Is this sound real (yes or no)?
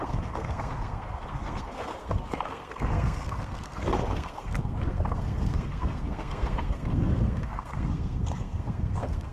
no